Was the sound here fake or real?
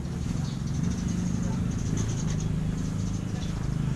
real